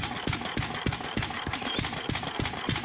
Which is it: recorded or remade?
recorded